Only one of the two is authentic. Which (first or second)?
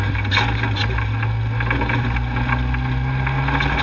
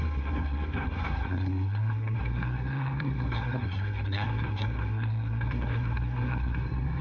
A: first